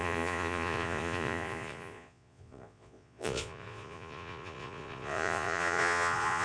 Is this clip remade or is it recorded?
remade